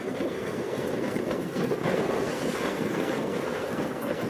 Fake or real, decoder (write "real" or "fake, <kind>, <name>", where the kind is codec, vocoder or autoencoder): fake, codec, SNAC